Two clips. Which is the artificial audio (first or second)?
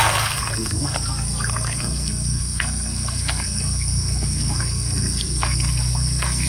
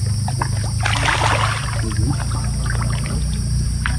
first